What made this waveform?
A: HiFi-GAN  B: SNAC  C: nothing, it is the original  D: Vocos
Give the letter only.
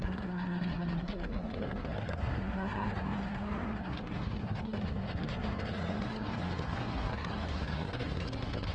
B